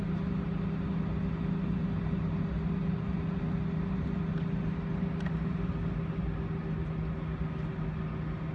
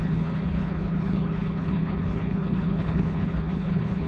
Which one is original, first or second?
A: first